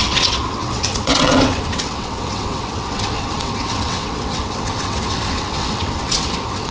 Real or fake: fake